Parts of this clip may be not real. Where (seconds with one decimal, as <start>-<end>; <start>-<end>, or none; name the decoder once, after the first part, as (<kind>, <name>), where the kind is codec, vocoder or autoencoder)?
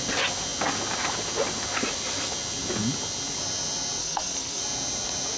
4.0-4.6 (codec, SNAC)